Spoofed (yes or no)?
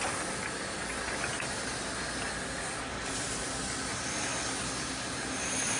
no